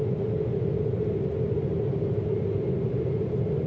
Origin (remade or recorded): recorded